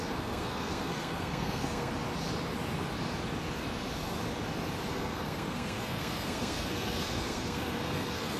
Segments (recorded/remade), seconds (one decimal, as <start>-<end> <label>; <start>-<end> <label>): 0.0-1.9 remade; 1.9-4.9 recorded; 4.9-8.4 remade